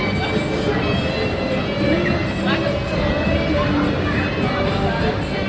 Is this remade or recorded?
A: recorded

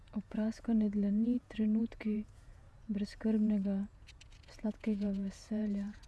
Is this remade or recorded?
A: remade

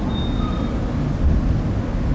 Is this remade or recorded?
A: recorded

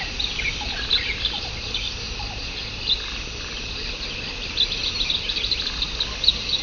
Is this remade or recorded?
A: recorded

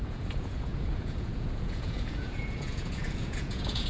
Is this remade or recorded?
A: remade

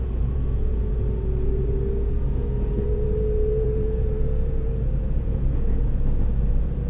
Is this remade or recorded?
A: remade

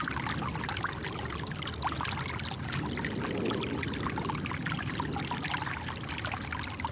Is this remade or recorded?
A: recorded